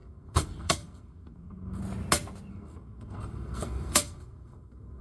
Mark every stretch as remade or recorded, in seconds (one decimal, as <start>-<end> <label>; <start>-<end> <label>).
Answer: 0.0-1.8 remade; 1.8-2.5 recorded; 2.5-5.0 remade